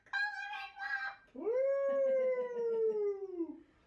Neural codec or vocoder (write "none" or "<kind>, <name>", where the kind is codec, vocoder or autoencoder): none